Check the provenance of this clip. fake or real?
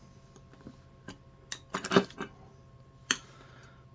real